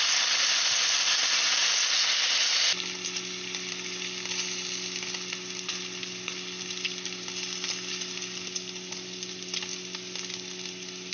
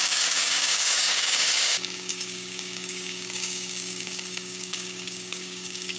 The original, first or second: first